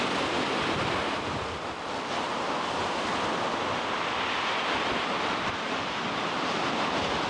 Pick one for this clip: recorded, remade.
recorded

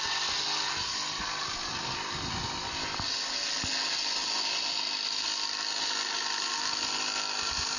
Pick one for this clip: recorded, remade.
recorded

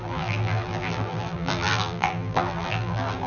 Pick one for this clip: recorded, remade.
remade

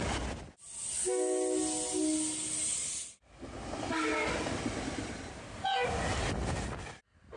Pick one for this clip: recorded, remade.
recorded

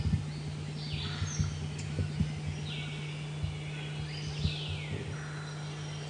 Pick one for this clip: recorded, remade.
recorded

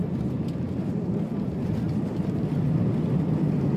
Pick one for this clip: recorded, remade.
recorded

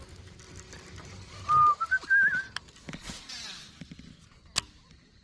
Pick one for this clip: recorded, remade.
recorded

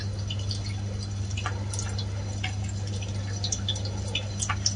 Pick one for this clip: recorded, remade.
recorded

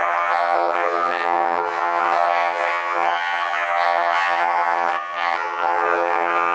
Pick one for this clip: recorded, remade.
remade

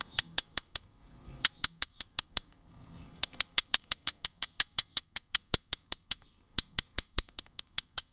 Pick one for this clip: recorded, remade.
remade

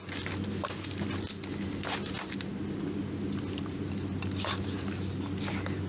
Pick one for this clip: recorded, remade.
recorded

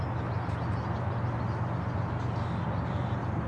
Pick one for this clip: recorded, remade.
recorded